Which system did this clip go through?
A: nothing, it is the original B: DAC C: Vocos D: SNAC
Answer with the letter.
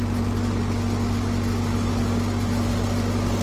A